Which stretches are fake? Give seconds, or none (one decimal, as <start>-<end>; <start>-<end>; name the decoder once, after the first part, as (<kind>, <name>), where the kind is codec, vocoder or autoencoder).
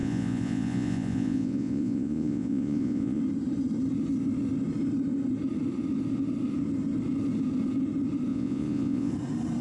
0.0-3.2 (vocoder, Vocos); 8.3-9.1